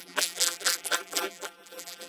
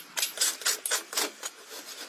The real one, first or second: second